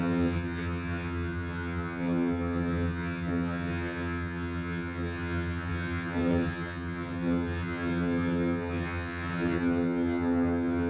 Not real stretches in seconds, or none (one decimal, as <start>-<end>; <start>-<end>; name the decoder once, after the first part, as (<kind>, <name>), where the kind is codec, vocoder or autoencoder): 0.0-10.9 (vocoder, HiFi-GAN)